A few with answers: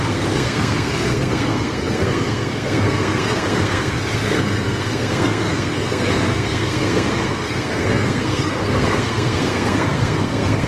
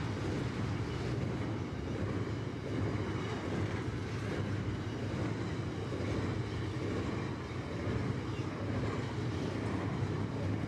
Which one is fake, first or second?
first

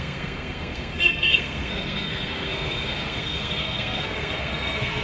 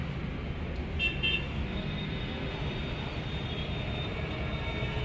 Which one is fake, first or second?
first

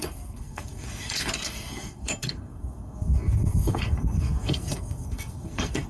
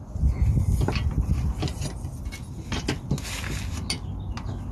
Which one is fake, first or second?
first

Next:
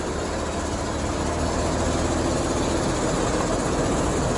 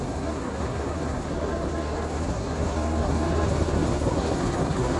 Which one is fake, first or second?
second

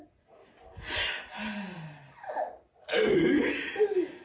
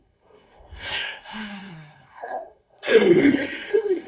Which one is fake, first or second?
second